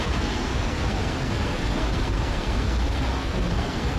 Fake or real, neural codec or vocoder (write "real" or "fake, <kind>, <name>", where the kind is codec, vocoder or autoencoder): fake, codec, SNAC